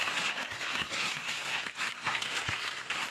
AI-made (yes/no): yes